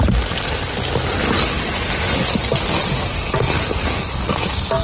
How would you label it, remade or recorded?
recorded